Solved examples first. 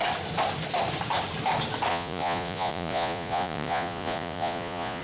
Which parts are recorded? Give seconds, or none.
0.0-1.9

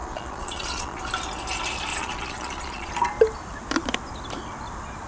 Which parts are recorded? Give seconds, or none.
1.0-1.9; 2.9-5.1

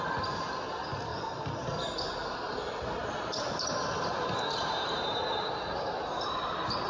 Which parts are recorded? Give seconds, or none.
0.0-6.9

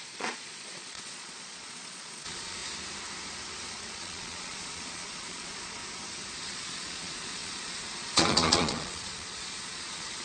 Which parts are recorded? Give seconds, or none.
2.6-3.7; 5.8-6.4

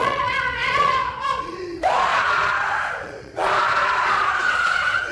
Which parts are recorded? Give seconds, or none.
none

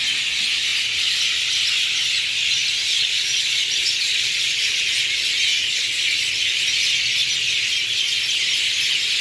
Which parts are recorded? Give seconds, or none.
0.0-0.7; 1.2-2.9; 4.8-5.5; 6.7-9.2